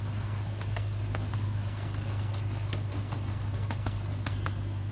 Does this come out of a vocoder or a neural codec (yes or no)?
yes